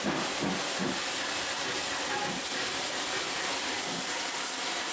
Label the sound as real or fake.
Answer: real